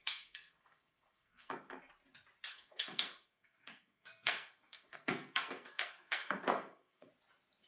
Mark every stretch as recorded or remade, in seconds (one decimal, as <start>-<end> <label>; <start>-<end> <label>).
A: 0.0-1.8 remade; 1.8-2.5 recorded; 2.5-7.1 remade; 7.1-7.7 recorded